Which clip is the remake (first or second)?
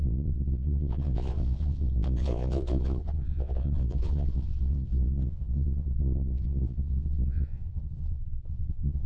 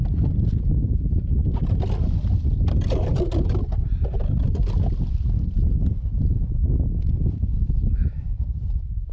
first